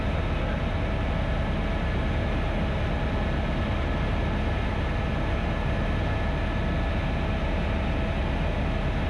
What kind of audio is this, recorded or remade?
recorded